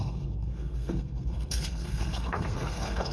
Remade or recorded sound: remade